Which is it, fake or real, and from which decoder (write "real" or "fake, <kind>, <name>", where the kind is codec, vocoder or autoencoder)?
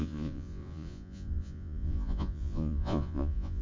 fake, vocoder, Vocos